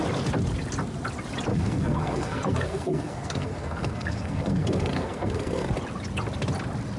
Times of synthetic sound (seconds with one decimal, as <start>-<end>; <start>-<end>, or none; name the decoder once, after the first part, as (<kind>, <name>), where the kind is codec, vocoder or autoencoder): 1.5-5.7 (codec, SNAC)